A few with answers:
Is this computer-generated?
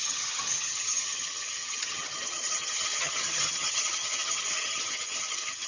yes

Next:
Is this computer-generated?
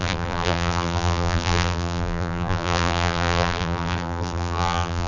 yes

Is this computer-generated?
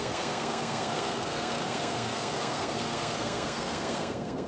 yes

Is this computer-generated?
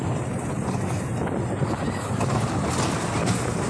no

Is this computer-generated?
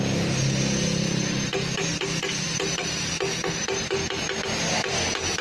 no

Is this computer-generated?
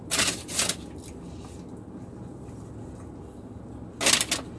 no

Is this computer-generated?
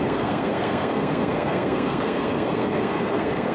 yes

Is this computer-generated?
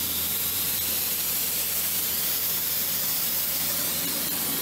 yes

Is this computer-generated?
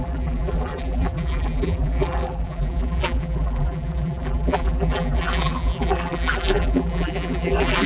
yes